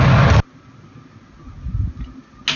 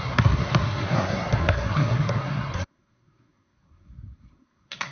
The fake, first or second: second